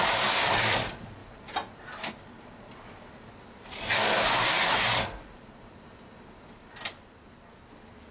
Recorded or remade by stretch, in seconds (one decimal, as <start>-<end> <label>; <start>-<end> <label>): 0.0-8.1 recorded